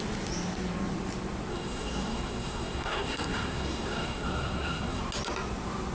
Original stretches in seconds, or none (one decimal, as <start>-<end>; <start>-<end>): 0.0-1.5; 5.0-5.9